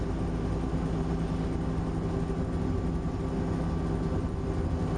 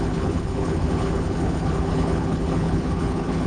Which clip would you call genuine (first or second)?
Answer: first